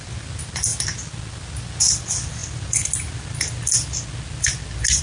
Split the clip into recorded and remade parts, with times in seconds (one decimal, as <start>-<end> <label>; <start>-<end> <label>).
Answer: 0.0-5.0 recorded

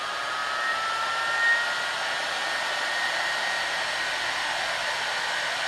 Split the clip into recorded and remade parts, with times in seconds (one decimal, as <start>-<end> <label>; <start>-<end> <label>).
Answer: 0.0-5.7 recorded

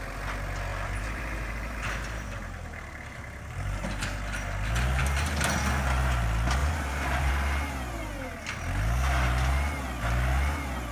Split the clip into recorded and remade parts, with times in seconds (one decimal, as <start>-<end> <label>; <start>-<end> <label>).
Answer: 0.0-0.7 recorded; 0.7-4.0 remade; 4.0-5.0 recorded; 5.0-5.5 remade; 5.5-6.6 recorded; 6.6-7.3 remade; 7.3-10.9 recorded